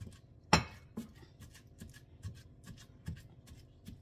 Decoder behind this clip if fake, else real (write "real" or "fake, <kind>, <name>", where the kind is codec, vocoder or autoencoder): real